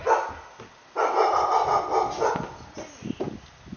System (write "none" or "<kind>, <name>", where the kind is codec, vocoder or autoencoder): none